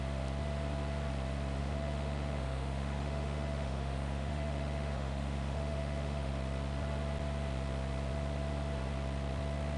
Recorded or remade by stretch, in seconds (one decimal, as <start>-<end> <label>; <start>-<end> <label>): 0.0-1.6 recorded; 1.6-6.3 remade; 6.3-9.8 recorded